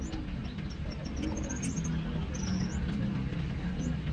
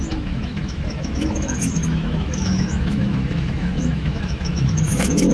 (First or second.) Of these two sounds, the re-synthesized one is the second